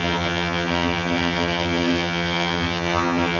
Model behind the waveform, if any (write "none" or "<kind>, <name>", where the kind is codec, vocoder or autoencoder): vocoder, HiFi-GAN